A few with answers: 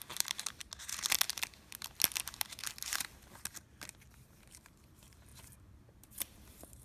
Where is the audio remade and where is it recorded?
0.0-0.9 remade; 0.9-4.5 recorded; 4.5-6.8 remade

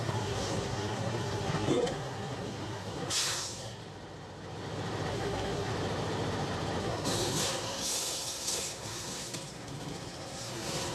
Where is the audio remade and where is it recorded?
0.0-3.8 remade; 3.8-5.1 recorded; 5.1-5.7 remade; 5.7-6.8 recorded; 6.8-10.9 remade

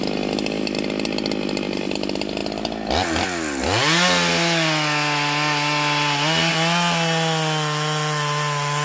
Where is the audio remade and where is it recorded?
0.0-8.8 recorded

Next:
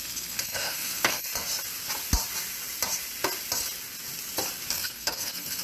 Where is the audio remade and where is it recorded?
0.0-1.3 remade; 1.3-4.7 recorded; 4.7-5.6 remade

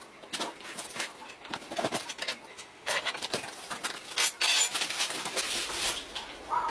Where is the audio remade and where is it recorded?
0.0-2.5 recorded; 2.5-3.1 remade; 3.1-6.7 recorded

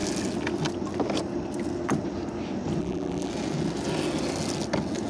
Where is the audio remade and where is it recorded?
0.0-2.8 recorded; 2.8-3.3 remade; 3.3-5.1 recorded

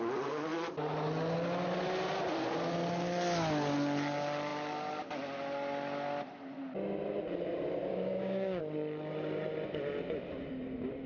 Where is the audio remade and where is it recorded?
0.0-7.9 recorded; 7.9-8.6 remade; 8.6-11.1 recorded

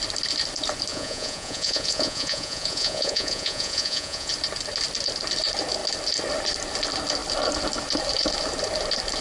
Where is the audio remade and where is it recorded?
0.0-0.9 recorded; 0.9-4.3 remade; 4.3-9.2 recorded